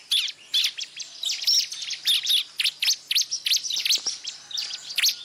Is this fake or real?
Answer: real